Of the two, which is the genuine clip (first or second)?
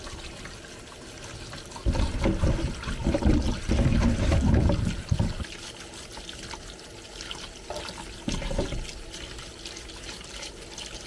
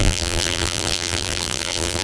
first